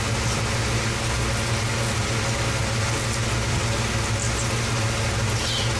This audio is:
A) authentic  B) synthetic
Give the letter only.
A